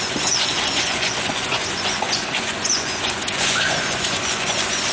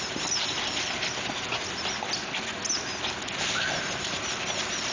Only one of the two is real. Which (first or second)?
second